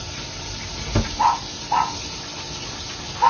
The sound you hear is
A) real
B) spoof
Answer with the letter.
A